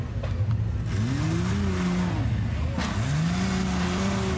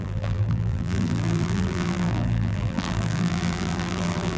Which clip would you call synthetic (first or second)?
second